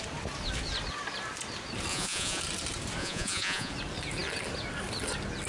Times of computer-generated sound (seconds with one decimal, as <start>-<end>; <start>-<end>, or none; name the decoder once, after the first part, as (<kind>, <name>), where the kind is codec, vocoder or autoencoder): 1.9-2.4 (vocoder, Vocos); 3.0-3.7